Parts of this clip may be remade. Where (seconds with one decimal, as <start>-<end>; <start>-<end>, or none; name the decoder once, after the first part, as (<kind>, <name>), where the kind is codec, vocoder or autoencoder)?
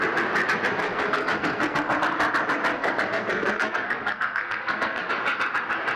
0.8-2.0 (codec, SNAC); 2.7-5.1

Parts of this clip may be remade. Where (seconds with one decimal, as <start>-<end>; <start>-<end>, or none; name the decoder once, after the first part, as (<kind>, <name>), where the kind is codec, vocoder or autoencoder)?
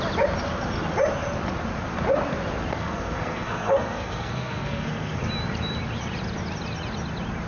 2.7-5.2 (codec, SNAC)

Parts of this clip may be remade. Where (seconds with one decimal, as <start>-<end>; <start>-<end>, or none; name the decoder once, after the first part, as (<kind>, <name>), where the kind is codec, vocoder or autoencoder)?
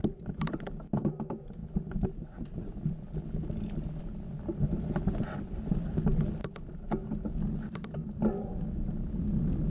none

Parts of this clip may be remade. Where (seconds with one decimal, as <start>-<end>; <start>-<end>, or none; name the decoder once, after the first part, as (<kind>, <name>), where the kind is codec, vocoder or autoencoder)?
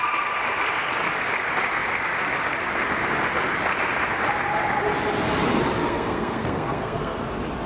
5.8-7.2 (codec, SNAC)